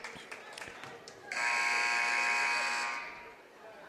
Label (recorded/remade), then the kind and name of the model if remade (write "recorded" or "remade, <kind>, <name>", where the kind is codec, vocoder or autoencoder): recorded